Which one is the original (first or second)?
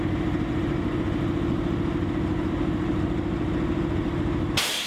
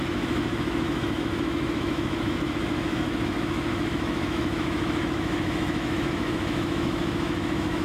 first